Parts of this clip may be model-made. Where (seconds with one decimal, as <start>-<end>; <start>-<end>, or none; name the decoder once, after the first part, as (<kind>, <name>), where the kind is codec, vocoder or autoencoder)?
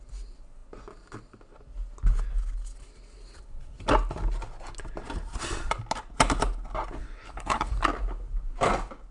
7.0-7.7 (codec, HILCodec)